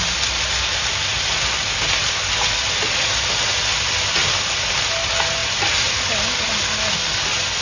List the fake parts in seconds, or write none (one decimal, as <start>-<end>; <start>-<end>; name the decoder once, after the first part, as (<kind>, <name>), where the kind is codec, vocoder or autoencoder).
none